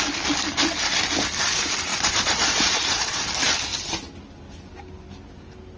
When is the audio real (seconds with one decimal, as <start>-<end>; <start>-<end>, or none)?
0.0-1.9; 3.3-5.8